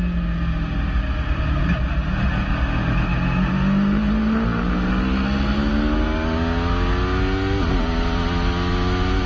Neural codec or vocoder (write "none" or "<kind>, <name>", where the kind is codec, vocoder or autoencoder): none